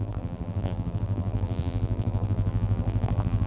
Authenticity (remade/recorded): remade